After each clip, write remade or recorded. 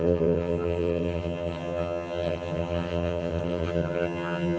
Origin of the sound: remade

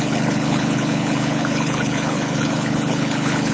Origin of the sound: remade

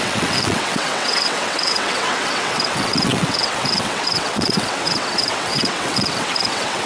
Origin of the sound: remade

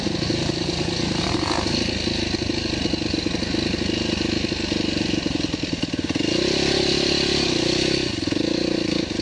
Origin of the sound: recorded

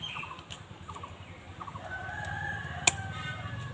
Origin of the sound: recorded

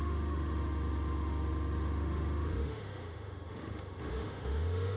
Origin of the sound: remade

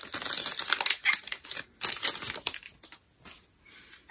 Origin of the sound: recorded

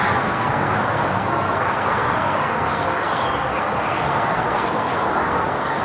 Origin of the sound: remade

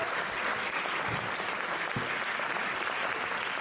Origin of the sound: recorded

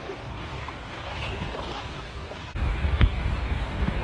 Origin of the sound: remade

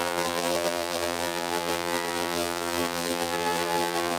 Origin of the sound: remade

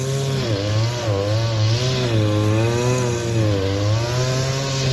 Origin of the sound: recorded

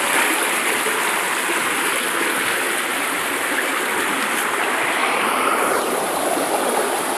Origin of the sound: recorded